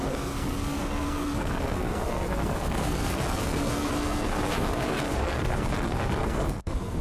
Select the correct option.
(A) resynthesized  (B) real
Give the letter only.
A